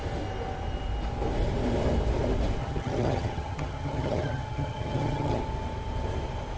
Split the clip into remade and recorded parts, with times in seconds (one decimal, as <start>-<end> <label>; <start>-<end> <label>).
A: 0.0-2.6 recorded; 2.6-5.4 remade; 5.4-6.6 recorded